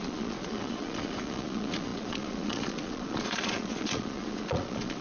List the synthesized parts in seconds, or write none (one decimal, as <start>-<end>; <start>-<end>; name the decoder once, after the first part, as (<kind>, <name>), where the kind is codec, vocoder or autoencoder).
0.0-5.0 (vocoder, Vocos)

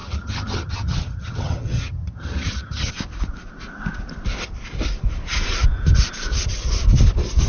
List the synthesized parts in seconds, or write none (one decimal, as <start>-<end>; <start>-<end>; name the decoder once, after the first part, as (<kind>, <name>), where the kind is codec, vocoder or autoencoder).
0.0-2.9 (vocoder, HiFi-GAN)